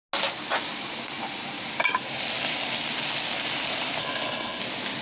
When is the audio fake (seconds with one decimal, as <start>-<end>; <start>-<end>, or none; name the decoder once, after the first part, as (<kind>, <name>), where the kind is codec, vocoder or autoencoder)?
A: 4.0-4.6 (codec, HILCodec)